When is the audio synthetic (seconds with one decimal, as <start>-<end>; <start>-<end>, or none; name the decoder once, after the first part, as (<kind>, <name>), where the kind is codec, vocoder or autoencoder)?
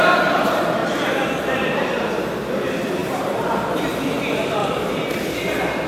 3.0-3.7 (vocoder, BigVGAN v2); 4.6-5.5